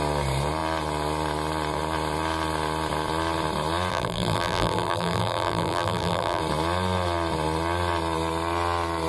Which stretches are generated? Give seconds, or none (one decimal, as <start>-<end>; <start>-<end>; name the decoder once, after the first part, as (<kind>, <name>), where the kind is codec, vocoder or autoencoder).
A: 3.9-6.4 (vocoder, BigVGAN v2)